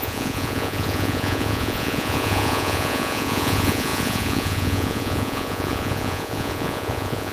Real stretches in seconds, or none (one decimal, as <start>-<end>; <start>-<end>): none